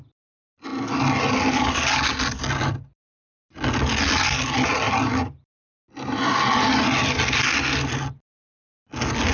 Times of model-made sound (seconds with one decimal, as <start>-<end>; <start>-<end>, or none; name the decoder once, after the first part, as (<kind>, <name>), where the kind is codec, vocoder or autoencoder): none